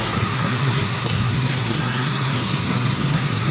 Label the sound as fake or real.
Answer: fake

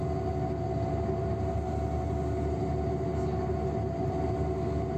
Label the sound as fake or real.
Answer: real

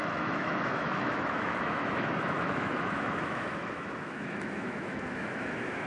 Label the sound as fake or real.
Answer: fake